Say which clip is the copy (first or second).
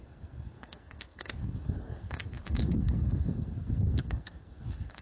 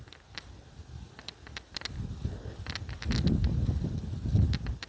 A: first